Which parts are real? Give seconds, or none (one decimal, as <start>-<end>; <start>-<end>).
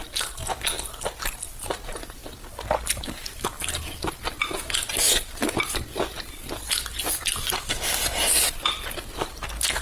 0.0-9.8